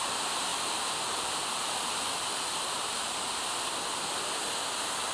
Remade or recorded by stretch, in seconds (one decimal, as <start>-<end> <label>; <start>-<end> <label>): 0.0-0.5 recorded; 0.5-2.9 remade; 2.9-5.1 recorded